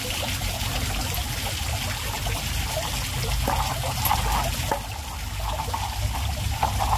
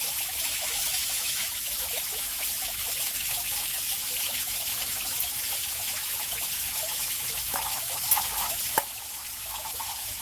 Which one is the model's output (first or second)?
second